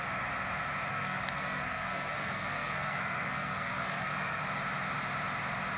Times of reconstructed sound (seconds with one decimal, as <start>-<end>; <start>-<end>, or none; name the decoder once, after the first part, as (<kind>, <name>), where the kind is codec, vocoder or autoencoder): 0.9-4.4 (codec, SNAC)